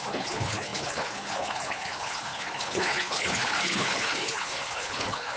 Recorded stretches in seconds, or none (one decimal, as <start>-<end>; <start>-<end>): none